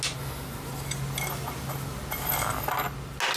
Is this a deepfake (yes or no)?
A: no